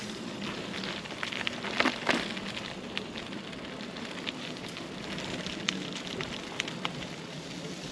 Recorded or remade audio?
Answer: recorded